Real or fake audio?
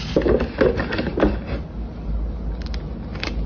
real